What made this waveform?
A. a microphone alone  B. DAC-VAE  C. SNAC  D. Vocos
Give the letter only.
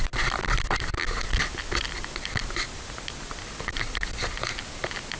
A